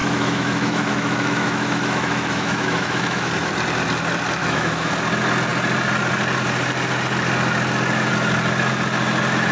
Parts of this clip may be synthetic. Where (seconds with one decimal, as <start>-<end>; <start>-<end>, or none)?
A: 0.0-3.3; 4.4-4.9